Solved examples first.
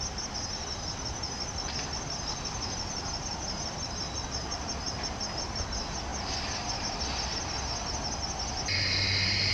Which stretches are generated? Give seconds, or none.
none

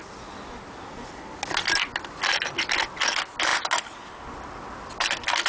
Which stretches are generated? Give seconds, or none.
none

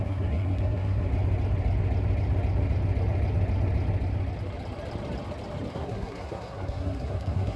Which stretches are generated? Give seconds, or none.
0.0-1.1 (codec, SNAC); 5.7-7.6

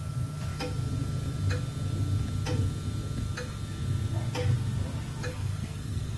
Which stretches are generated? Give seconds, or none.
5.3-6.2 (codec, SNAC)

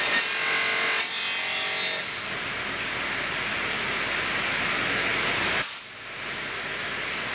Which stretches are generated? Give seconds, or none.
none

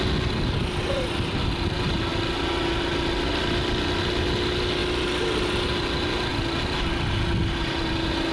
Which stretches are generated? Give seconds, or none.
none

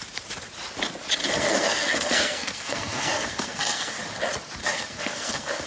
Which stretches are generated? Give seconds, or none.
1.2-3.9 (codec, SNAC); 4.6-5.7

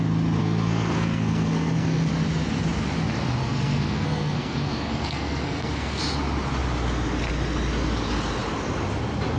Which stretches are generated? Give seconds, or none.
0.4-2.1 (codec, SNAC); 3.4-6.0